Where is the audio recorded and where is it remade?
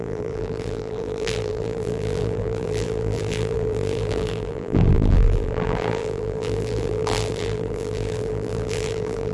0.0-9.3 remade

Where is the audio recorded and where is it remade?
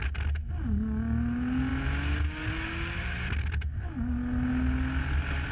0.0-5.5 recorded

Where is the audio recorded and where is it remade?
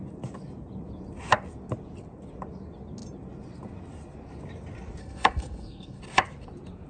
0.0-5.0 recorded; 5.0-6.0 remade; 6.0-6.9 recorded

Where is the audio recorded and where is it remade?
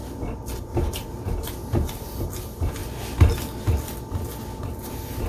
0.0-0.6 recorded; 0.6-2.8 remade; 2.8-4.6 recorded; 4.6-5.3 remade